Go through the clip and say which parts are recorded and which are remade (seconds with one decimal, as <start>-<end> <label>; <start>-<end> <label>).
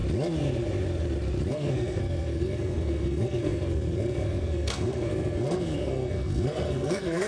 0.0-1.5 recorded; 1.5-7.3 remade